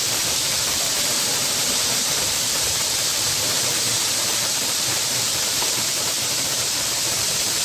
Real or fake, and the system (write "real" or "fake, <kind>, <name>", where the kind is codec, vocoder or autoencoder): fake, vocoder, BigVGAN v2